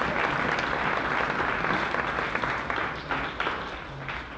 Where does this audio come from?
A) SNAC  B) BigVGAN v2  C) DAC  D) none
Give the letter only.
D